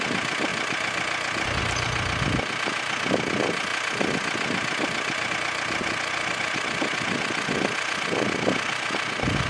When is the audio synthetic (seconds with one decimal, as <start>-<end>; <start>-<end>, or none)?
none